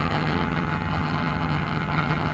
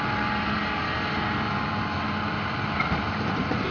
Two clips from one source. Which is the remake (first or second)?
first